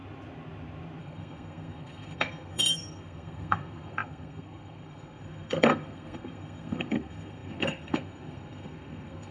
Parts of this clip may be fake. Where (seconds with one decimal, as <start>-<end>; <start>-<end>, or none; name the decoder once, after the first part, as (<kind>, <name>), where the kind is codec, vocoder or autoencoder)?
1.0-9.3 (codec, SNAC)